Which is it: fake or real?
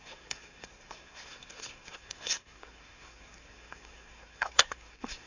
fake